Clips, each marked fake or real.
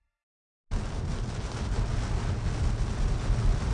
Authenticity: real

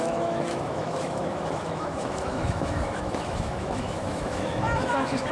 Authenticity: fake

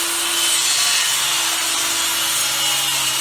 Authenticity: real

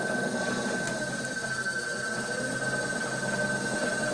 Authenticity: real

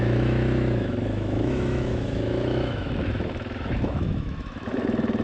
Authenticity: fake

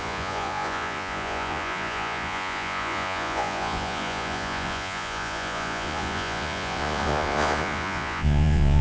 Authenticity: fake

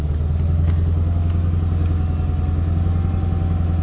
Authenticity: real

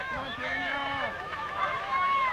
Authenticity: fake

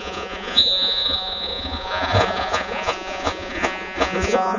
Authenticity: fake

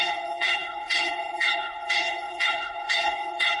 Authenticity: fake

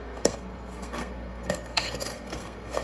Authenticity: fake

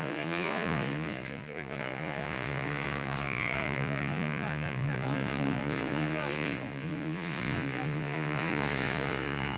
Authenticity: fake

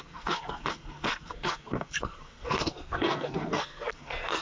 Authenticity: fake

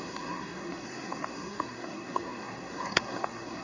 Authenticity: fake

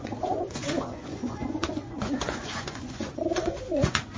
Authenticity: fake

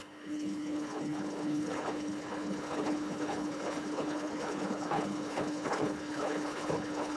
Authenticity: fake